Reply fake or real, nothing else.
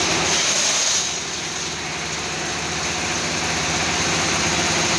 real